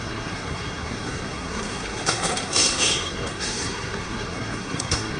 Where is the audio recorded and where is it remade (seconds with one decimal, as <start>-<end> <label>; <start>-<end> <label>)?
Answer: 0.0-5.2 remade